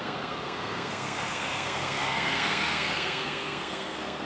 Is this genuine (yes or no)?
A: no